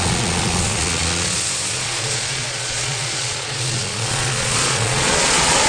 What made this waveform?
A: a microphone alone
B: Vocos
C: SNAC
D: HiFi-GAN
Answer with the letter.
B